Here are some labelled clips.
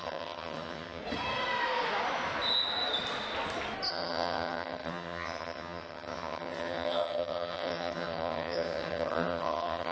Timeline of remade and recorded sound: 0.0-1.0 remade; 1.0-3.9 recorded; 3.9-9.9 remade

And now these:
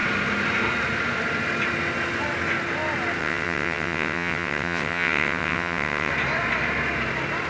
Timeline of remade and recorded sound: 0.0-3.2 recorded; 3.2-6.1 remade; 6.1-7.5 recorded

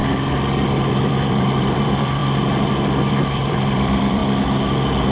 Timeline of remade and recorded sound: 0.0-0.9 recorded; 0.9-2.2 remade; 2.2-3.1 recorded; 3.1-4.2 remade; 4.2-5.1 recorded

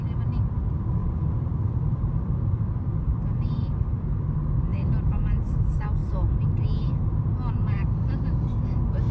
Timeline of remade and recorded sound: 0.0-3.2 remade; 3.2-4.0 recorded; 4.0-6.0 remade; 6.0-8.7 recorded; 8.7-9.1 remade